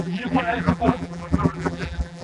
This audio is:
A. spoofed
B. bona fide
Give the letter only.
A